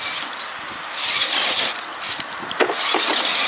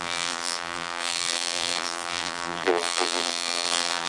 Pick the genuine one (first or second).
first